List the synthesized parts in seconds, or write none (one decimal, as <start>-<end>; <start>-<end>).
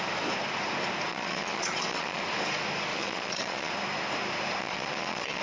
1.1-2.2; 2.9-3.7; 4.6-5.4